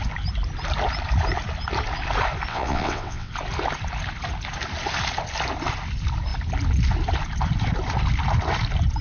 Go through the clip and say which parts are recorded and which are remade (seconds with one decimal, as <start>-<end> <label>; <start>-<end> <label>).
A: 0.0-2.5 recorded; 2.5-3.3 remade; 3.3-9.0 recorded

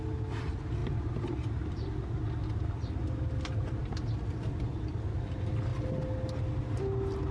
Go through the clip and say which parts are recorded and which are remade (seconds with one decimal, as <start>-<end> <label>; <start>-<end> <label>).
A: 0.0-7.3 recorded

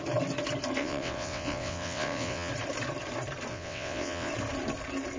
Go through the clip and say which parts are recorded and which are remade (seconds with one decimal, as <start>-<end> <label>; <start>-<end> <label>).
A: 0.0-0.8 recorded; 0.8-2.5 remade; 2.5-3.5 recorded; 3.5-4.3 remade; 4.3-5.2 recorded

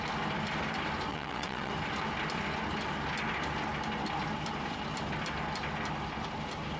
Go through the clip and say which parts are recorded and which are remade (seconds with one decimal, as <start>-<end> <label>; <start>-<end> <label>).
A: 0.0-1.1 recorded; 1.1-1.7 remade; 1.7-6.8 recorded